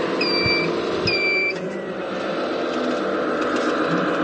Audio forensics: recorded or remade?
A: recorded